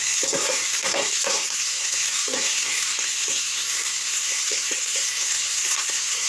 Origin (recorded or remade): remade